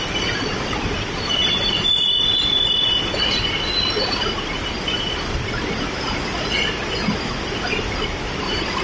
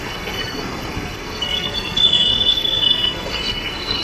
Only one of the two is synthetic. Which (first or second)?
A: second